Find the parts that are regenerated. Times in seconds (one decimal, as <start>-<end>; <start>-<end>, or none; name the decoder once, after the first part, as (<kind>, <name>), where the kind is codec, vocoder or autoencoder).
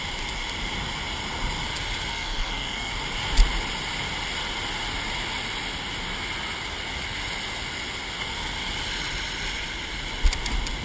2.1-2.9 (codec, SNAC)